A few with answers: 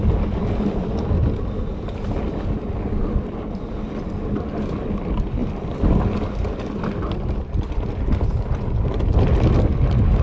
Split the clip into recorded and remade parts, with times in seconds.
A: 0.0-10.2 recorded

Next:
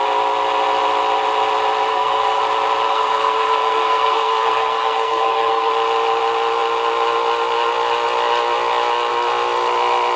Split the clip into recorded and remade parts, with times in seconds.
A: 0.0-1.9 recorded; 1.9-2.4 remade; 2.4-2.9 recorded; 2.9-5.7 remade; 5.7-10.2 recorded

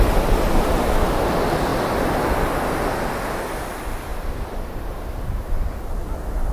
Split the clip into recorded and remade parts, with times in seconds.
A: 0.0-6.5 recorded